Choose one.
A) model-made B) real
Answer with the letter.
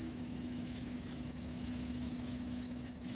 A